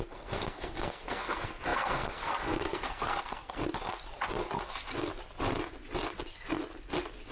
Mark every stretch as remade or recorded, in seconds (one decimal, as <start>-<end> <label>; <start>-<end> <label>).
0.0-3.6 remade; 3.6-7.3 recorded